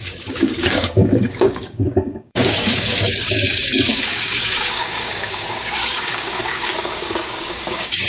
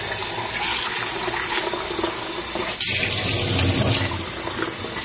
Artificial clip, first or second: first